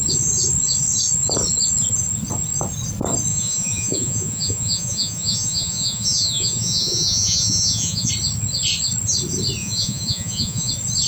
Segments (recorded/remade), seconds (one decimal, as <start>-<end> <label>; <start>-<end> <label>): 0.0-3.3 recorded; 3.3-8.1 remade; 8.1-9.6 recorded; 9.6-10.7 remade; 10.7-11.1 recorded